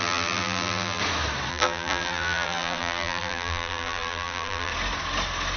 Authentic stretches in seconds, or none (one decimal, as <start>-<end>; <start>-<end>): 1.0-1.5; 4.7-5.6